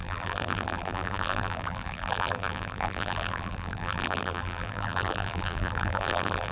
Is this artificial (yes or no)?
yes